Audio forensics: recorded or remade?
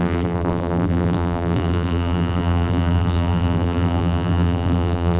remade